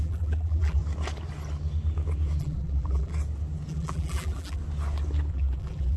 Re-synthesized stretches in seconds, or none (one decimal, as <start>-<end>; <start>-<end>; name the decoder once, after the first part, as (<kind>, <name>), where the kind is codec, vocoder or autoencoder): 0.0-0.8 (vocoder, BigVGAN v2); 2.4-3.1; 3.7-4.6; 5.3-6.0